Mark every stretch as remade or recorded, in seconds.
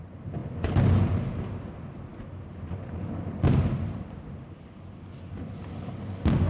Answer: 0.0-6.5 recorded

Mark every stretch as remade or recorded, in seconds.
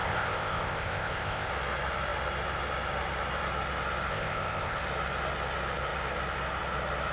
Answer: 0.0-1.5 remade; 1.5-4.1 recorded; 4.1-4.8 remade; 4.8-7.1 recorded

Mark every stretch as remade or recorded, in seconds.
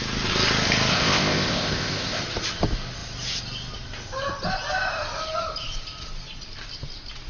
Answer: 0.0-0.9 recorded; 0.9-2.2 remade; 2.2-7.3 recorded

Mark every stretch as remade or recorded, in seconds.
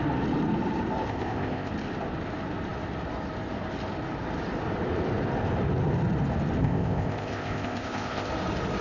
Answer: 0.0-1.1 recorded; 1.1-1.7 remade; 1.7-6.6 recorded; 6.6-8.3 remade; 8.3-8.8 recorded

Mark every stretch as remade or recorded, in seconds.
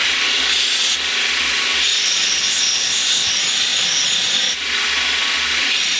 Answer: 0.0-2.4 recorded; 2.4-3.3 remade; 3.3-6.0 recorded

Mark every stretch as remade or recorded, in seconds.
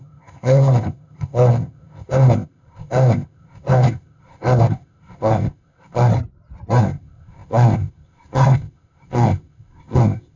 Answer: 0.0-6.1 remade; 6.1-6.8 recorded; 6.8-10.4 remade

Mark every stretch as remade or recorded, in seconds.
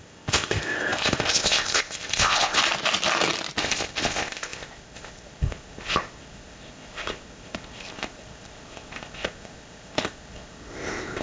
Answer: 0.0-2.6 remade; 2.6-3.6 recorded; 3.6-11.2 remade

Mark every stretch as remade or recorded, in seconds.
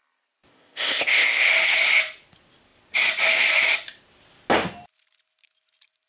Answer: 0.0-0.5 recorded; 0.5-1.5 remade; 1.5-6.1 recorded